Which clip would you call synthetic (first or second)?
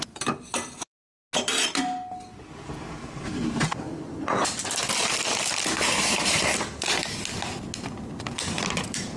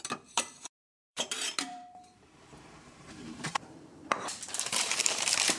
second